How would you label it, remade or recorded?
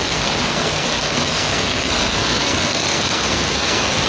remade